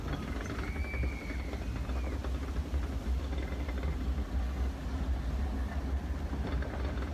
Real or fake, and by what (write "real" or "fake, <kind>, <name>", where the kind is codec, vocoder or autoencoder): real